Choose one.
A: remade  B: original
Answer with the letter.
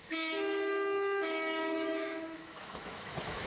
A